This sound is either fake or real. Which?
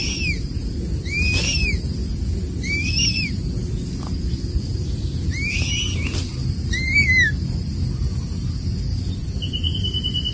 real